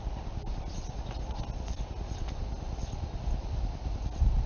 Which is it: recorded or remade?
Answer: recorded